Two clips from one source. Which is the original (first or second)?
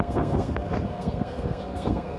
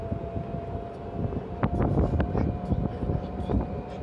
second